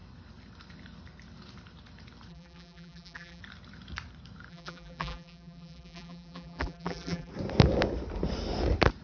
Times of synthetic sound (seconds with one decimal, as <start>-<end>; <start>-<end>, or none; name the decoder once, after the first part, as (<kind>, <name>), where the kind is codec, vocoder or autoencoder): 2.3-3.4 (vocoder, BigVGAN v2); 4.5-7.3